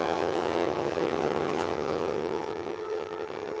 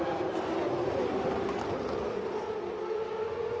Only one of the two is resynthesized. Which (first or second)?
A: first